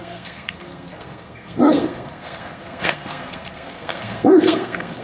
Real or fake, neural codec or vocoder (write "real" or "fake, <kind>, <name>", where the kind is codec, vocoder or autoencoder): fake, codec, SNAC